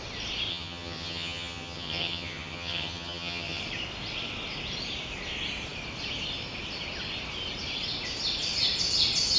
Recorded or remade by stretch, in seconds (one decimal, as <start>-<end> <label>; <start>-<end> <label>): 0.0-0.5 recorded; 0.5-3.6 remade; 3.6-9.4 recorded